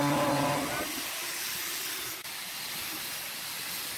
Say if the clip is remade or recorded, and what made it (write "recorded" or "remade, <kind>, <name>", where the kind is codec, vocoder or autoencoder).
recorded